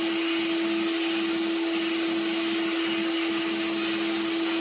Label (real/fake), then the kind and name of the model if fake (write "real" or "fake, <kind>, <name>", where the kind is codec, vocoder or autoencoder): real